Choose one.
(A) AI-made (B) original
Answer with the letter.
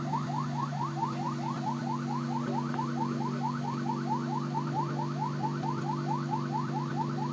B